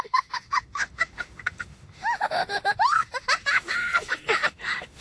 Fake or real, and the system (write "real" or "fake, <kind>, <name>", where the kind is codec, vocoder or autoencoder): fake, autoencoder, DAC-VAE